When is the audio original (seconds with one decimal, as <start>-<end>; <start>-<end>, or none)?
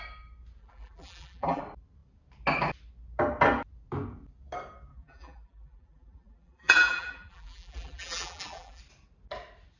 0.0-0.6; 1.6-4.9; 8.8-9.8